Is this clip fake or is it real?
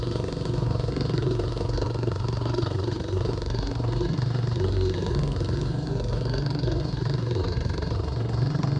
fake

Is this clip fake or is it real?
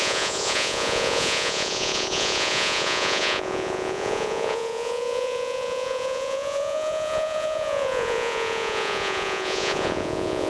fake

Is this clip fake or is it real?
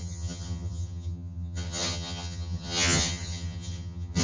fake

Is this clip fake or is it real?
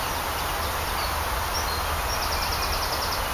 real